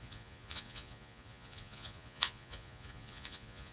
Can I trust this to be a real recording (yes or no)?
no